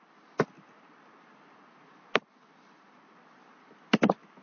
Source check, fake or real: real